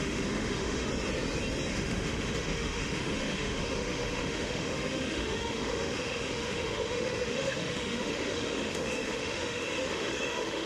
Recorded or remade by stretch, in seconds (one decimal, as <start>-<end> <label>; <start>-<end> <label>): 0.0-0.9 remade; 0.9-1.7 recorded; 1.7-10.7 remade